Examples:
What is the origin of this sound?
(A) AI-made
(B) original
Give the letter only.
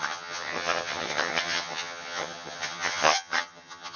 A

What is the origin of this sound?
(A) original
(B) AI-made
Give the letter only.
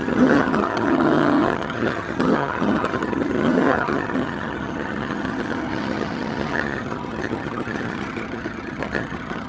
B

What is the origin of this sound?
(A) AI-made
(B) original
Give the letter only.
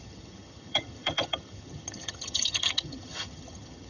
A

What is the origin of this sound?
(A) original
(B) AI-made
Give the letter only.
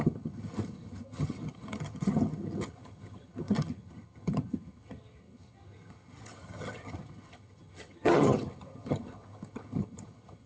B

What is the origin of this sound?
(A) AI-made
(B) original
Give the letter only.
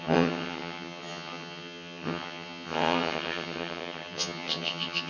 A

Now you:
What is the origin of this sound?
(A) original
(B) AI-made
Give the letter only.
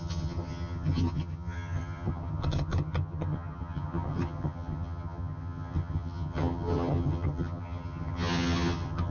B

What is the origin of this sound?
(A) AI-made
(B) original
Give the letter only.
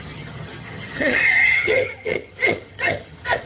A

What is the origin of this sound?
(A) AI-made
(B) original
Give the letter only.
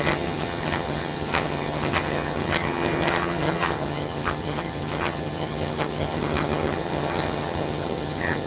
A